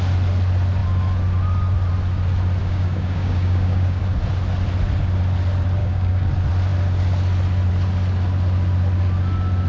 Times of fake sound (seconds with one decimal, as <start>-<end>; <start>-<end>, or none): 2.6-4.0; 5.8-6.3